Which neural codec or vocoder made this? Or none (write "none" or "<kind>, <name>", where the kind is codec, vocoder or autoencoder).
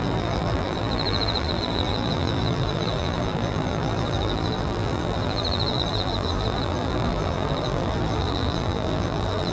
vocoder, BigVGAN v2